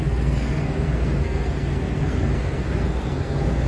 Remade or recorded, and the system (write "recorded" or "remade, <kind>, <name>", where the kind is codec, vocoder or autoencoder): remade, codec, SNAC